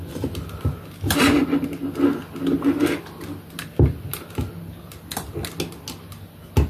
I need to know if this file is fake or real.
real